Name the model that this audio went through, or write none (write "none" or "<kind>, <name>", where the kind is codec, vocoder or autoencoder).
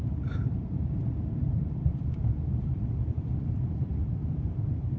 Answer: vocoder, BigVGAN v2